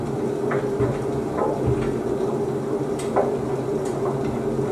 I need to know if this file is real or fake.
real